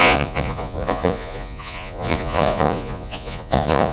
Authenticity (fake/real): fake